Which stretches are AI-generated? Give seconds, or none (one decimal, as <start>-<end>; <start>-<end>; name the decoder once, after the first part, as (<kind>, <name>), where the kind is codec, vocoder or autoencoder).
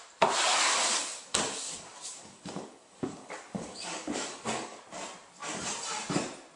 1.0-4.8 (codec, DAC)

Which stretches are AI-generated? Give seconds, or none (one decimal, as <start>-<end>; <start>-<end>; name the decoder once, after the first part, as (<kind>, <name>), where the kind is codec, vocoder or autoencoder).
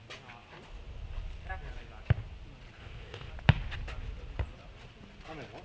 2.8-3.3 (codec, ZipCodec)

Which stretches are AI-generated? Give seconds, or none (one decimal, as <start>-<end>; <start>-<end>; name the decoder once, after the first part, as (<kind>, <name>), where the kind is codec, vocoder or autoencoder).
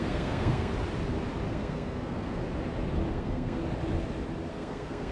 0.0-0.7 (codec, SNAC); 1.5-2.4; 3.1-3.6; 4.5-5.1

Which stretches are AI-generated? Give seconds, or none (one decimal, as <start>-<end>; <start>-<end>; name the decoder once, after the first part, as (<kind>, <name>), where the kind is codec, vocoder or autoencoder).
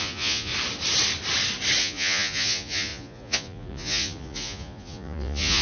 0.0-0.5 (vocoder, Vocos); 1.8-5.6